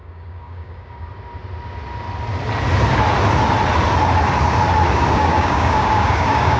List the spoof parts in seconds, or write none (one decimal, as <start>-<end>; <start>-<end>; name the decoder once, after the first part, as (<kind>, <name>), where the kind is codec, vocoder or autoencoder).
0.0-1.1 (codec, DAC); 5.1-6.6